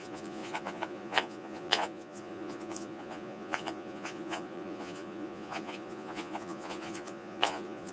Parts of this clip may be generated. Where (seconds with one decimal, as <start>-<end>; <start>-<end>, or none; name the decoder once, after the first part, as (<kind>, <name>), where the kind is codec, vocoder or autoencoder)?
0.0-7.9 (vocoder, Vocos)